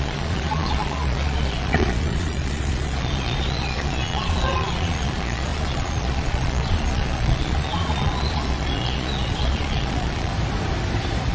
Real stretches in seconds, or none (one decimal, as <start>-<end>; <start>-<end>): 10.3-11.3